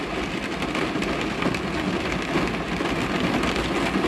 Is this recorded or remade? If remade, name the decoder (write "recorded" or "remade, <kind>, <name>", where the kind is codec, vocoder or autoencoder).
recorded